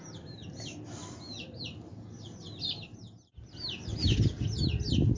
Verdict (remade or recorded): recorded